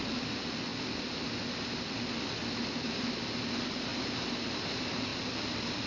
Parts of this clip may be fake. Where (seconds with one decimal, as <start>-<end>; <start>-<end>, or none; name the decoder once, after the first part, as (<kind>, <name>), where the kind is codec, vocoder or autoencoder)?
3.9-4.5 (vocoder, BigVGAN v2)